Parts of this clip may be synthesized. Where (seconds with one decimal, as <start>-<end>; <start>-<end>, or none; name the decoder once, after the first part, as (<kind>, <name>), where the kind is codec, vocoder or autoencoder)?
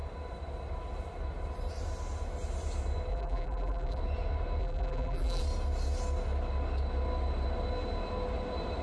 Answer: 3.1-4.0 (vocoder, BigVGAN v2); 4.6-5.4